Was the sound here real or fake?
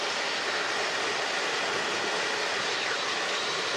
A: real